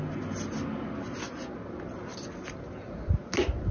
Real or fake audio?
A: real